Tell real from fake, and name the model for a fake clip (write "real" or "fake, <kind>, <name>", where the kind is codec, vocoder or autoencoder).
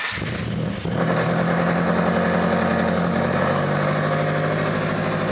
real